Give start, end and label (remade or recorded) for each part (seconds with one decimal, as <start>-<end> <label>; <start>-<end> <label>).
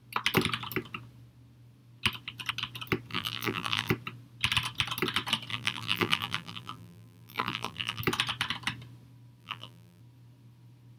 0.0-3.1 recorded; 3.1-3.9 remade; 3.9-5.5 recorded; 5.5-8.0 remade; 8.0-9.4 recorded; 9.4-10.0 remade; 10.0-11.0 recorded